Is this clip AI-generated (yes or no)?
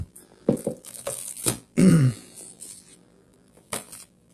yes